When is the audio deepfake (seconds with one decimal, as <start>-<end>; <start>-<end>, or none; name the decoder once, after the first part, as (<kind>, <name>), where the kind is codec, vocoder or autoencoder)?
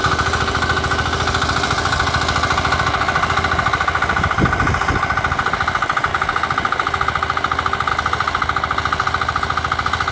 none